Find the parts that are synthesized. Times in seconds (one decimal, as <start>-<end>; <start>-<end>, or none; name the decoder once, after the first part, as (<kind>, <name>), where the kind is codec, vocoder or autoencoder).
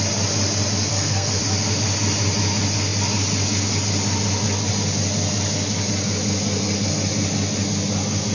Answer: 0.9-1.4 (codec, SNAC)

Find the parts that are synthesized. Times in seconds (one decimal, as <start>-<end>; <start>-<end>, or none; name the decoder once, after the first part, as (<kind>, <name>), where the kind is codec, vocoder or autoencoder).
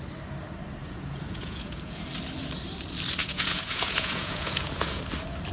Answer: 0.8-2.0 (vocoder, Vocos); 3.2-5.0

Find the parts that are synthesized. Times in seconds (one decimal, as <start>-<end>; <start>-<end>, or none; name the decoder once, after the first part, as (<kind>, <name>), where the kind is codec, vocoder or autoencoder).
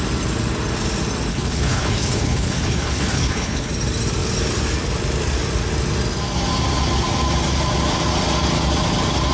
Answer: 1.3-3.7 (codec, HILCodec)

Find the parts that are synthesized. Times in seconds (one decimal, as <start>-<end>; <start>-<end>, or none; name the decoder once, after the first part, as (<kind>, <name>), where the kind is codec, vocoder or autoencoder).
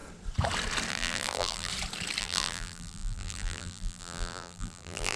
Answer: 0.9-1.7 (vocoder, BigVGAN v2); 2.2-5.2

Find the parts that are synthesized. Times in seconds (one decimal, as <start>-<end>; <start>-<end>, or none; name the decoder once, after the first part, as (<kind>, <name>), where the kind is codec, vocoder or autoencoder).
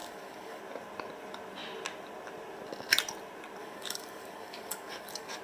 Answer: 0.0-0.6 (codec, DAC); 3.6-5.4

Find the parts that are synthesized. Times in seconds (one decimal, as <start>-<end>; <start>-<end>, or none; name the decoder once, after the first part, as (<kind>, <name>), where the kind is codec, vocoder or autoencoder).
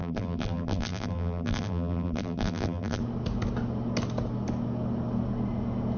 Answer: 0.0-3.0 (vocoder, BigVGAN v2)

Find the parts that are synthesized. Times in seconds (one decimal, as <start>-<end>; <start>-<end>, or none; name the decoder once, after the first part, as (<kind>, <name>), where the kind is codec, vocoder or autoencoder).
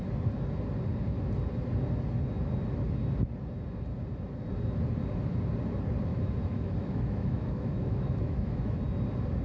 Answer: 6.1-8.8 (autoencoder, DAC-VAE)